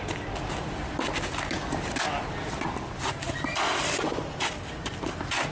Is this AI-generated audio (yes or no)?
no